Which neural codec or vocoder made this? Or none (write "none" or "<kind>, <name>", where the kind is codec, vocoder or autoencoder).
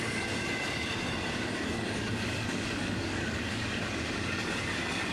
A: codec, DAC